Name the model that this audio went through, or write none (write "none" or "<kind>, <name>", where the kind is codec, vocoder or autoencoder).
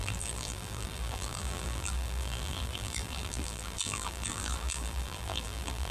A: vocoder, BigVGAN v2